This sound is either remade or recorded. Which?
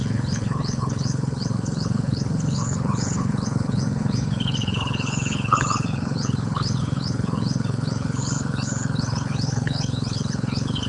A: remade